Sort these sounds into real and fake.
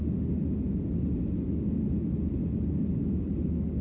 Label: real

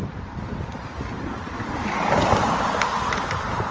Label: fake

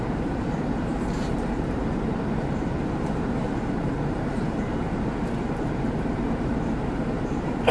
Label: fake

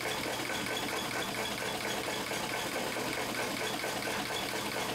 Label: real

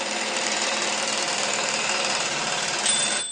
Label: fake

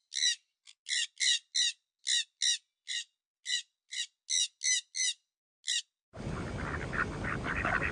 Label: real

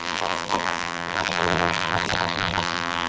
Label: fake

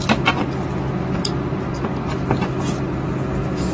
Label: real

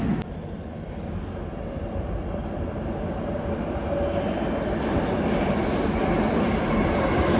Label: real